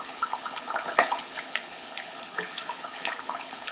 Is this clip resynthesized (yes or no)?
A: yes